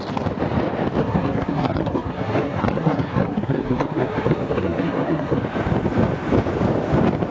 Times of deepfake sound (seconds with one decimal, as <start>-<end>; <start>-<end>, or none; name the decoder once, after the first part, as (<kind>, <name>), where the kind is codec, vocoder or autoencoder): 1.0-5.4 (codec, SNAC)